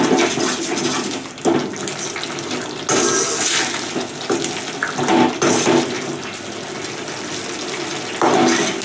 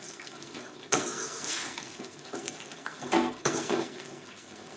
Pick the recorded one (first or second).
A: first